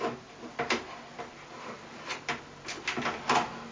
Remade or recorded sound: recorded